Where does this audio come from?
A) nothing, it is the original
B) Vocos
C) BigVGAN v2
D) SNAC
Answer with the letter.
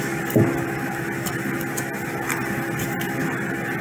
A